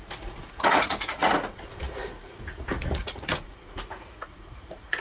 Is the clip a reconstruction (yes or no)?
yes